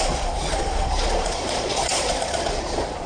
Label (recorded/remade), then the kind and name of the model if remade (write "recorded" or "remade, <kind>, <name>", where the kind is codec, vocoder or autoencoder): remade, vocoder, Vocos